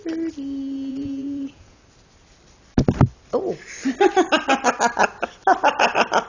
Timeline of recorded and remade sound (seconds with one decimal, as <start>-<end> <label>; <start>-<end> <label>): 0.0-0.9 recorded; 0.9-1.8 remade; 1.8-6.3 recorded